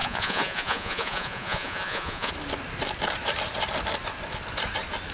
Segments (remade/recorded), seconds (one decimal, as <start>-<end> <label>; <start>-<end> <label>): 0.0-2.3 remade; 2.3-5.1 recorded